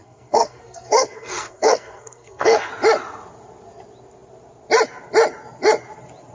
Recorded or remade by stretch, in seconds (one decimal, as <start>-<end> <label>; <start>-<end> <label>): 0.0-2.7 remade; 2.7-6.3 recorded